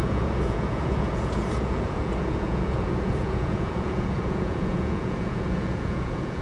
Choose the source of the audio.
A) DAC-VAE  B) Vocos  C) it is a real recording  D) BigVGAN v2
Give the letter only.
B